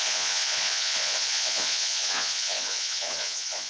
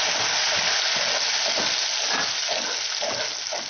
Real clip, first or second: second